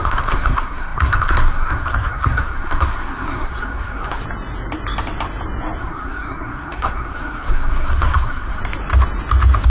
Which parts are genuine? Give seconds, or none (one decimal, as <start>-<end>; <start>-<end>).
4.2-5.8; 8.6-9.7